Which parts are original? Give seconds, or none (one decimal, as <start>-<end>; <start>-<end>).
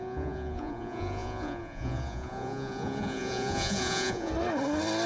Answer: 4.3-5.1